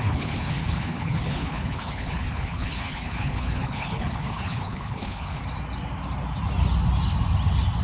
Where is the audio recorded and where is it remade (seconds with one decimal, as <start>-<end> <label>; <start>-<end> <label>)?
0.0-5.4 remade; 5.4-7.8 recorded